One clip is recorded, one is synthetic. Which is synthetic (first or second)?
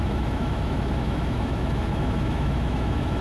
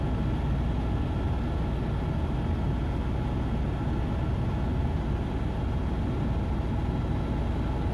first